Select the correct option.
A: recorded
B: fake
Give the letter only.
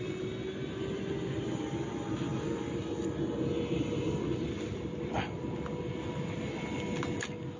A